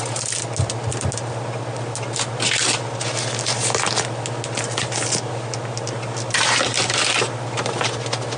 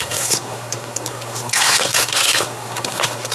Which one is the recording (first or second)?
first